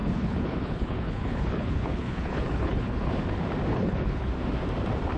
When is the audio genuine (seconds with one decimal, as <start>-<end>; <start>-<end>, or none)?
3.1-3.7; 4.3-5.2